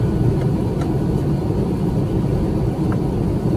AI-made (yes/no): no